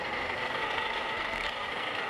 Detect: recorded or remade remade